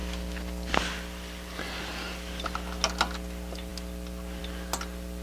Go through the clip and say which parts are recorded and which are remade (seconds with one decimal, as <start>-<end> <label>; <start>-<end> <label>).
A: 0.0-5.2 recorded